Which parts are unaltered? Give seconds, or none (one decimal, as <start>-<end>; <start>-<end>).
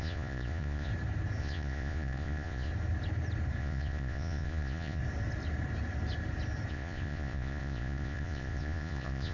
0.9-1.4; 2.7-3.6; 5.0-6.7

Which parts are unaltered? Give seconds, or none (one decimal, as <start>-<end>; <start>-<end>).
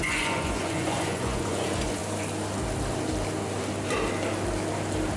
2.0-5.2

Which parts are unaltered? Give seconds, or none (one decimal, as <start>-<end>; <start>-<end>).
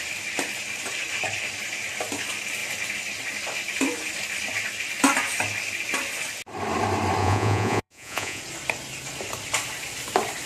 0.0-7.2; 8.4-10.5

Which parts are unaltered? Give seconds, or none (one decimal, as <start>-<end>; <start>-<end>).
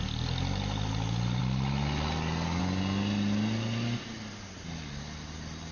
0.0-5.7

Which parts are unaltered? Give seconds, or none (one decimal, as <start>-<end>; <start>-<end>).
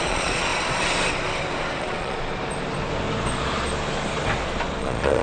0.5-1.8; 2.2-4.8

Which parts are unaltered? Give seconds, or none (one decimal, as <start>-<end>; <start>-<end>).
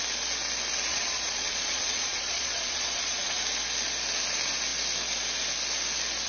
0.0-0.9; 3.4-6.3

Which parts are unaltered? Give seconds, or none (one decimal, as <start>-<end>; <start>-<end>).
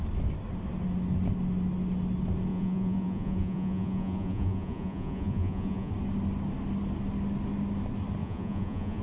0.0-2.5; 5.9-8.2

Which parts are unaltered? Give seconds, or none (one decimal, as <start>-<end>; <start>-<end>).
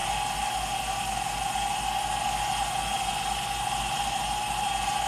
0.0-5.1